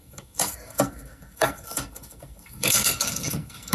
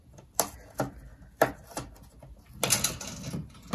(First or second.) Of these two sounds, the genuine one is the second